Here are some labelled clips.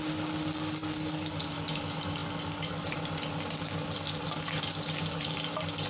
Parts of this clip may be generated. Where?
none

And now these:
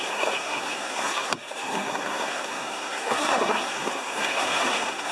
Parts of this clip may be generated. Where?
0.0-5.1 (codec, SNAC)

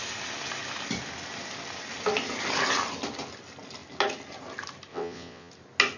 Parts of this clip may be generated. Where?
4.9-5.5 (vocoder, WaveNeXt)